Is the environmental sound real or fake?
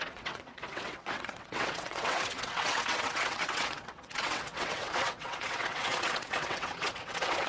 fake